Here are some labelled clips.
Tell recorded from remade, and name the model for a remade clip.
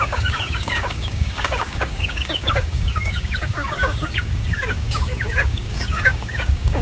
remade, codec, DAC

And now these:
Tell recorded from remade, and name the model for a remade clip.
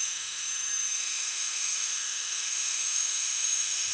remade, autoencoder, DAC-VAE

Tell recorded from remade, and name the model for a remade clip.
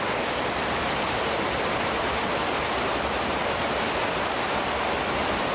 recorded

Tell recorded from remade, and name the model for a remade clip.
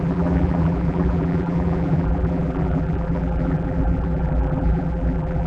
remade, vocoder, BigVGAN v2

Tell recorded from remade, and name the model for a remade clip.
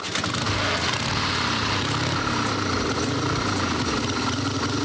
recorded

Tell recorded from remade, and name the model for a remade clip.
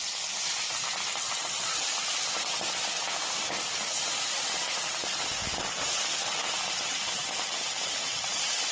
recorded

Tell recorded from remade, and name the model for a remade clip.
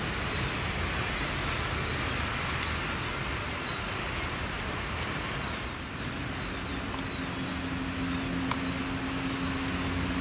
recorded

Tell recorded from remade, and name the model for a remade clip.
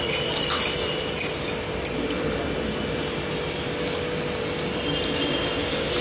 recorded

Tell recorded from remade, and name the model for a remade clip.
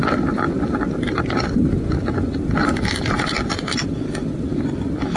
recorded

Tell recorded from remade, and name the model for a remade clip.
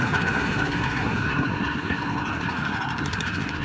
remade, codec, SNAC